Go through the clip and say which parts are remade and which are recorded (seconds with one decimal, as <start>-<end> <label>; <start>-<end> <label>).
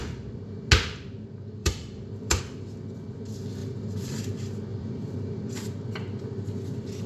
0.0-1.6 recorded; 1.6-2.4 remade; 2.4-3.6 recorded; 3.6-4.2 remade; 4.2-4.7 recorded; 4.7-5.4 remade; 5.4-7.1 recorded